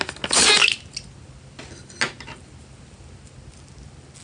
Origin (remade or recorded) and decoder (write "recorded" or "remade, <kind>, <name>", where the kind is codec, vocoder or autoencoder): recorded